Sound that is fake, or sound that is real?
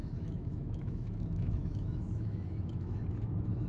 fake